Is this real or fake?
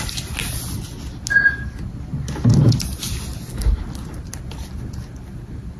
real